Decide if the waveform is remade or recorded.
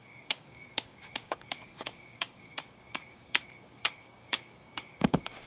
remade